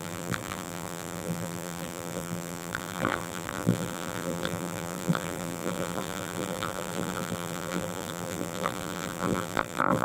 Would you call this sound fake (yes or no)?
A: yes